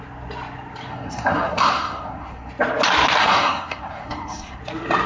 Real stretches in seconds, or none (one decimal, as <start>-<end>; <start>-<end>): 0.0-0.9; 2.5-3.2; 4.6-5.1